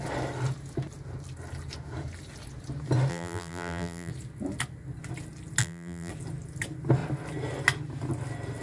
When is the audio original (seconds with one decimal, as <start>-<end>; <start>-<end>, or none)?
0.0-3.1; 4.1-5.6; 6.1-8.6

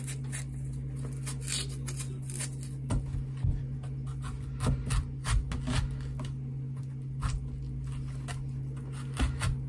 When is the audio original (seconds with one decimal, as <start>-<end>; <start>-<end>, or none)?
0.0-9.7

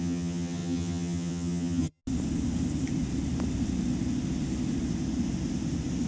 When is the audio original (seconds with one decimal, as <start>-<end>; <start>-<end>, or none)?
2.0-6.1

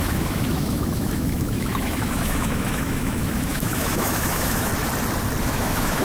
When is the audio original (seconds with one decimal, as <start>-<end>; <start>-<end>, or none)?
4.7-5.4

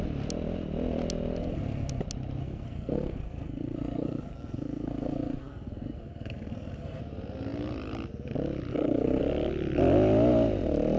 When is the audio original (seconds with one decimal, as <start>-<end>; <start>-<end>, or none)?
0.0-1.4; 2.0-2.4; 7.0-8.7; 9.2-11.0

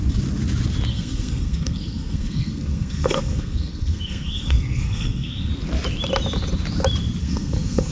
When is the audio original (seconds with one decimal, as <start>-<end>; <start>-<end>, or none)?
0.0-0.9; 5.5-7.2